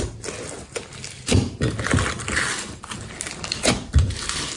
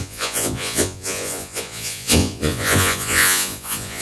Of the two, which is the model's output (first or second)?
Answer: second